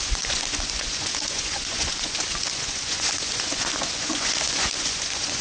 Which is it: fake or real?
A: fake